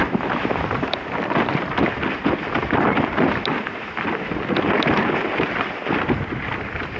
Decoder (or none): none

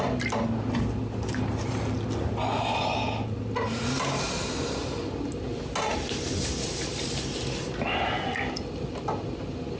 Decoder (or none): none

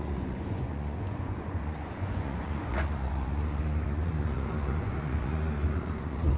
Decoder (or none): vocoder, Vocos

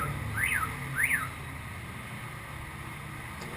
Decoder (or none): none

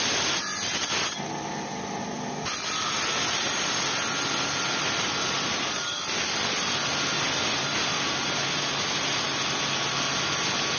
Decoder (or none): none